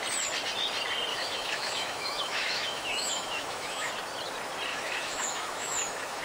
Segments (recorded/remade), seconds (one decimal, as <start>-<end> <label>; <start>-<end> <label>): 0.0-1.1 recorded; 1.1-3.9 remade; 3.9-4.7 recorded; 4.7-6.2 remade